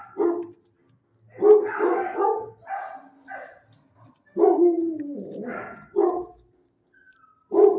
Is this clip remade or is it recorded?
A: recorded